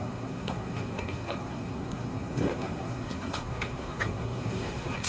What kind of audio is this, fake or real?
fake